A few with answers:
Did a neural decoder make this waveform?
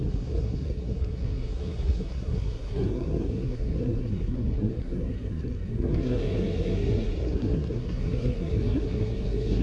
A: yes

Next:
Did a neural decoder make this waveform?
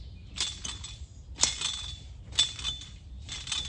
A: no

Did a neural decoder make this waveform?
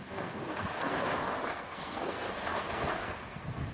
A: yes